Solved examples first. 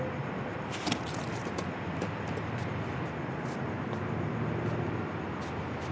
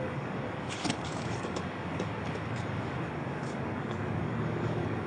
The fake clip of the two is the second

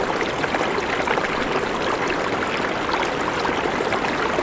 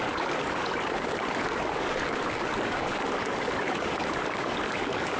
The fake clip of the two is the second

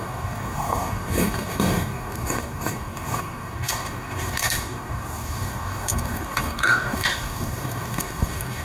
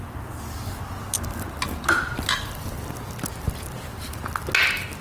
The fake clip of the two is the first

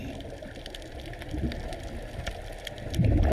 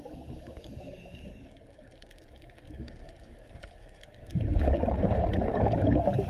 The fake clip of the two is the second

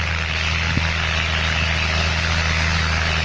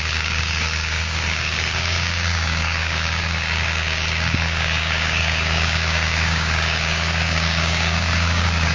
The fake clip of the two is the second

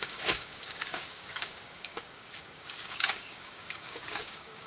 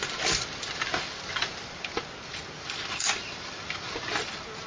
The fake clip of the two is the first